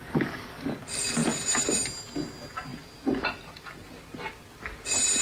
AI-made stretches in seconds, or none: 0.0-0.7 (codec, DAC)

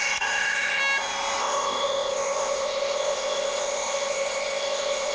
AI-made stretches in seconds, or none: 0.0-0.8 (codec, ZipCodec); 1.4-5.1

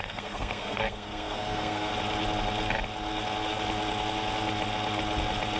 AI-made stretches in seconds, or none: 0.0-1.9 (codec, SNAC)